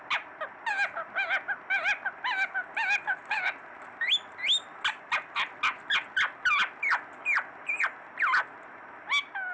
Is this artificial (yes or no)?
no